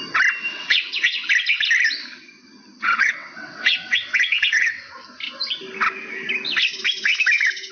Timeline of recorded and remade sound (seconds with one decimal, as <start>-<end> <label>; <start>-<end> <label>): 0.0-0.5 recorded; 0.5-1.3 remade; 1.3-2.8 recorded; 2.8-4.9 remade; 4.9-7.7 recorded

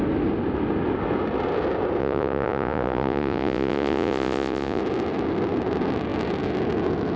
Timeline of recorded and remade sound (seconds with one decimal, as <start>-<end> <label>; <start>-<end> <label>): 0.0-2.0 recorded; 2.0-4.8 remade; 4.8-7.2 recorded

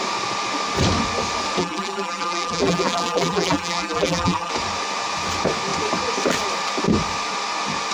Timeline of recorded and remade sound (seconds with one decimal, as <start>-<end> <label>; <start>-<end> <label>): 0.0-1.6 recorded; 1.6-4.5 remade; 4.5-7.9 recorded

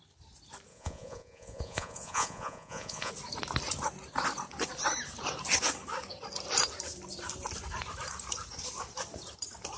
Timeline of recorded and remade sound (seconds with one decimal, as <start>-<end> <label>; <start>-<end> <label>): 0.0-0.7 recorded; 0.7-3.1 remade; 3.1-9.8 recorded

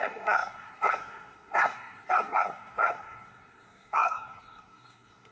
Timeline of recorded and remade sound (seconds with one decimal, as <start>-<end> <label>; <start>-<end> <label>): 0.0-5.3 remade